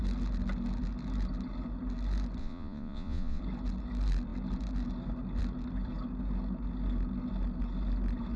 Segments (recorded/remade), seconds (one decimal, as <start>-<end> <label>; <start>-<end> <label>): 0.0-2.4 recorded; 2.4-3.4 remade; 3.4-8.4 recorded